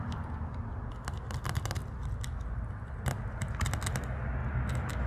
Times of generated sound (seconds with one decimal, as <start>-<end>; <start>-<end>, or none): none